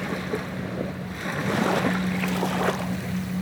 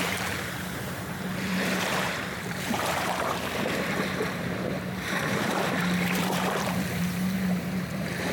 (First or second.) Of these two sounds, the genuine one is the first